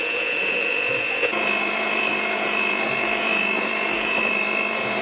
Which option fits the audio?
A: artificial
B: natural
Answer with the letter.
A